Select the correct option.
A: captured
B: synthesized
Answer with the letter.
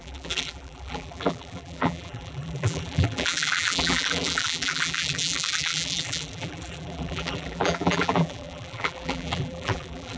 B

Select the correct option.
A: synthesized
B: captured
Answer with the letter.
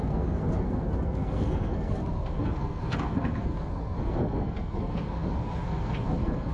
A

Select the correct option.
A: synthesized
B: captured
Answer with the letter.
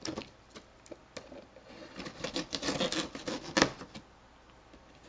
B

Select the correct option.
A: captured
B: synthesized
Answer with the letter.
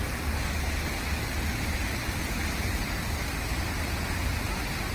A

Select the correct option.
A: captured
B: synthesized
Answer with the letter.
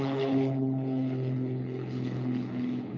B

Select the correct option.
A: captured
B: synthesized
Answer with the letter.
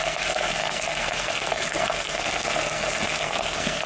B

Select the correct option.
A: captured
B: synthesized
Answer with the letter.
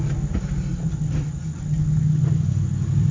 A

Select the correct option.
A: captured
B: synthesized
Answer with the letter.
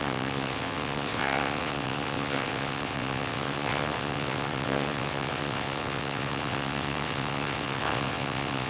B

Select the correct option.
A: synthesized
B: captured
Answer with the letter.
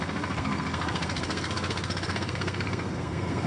A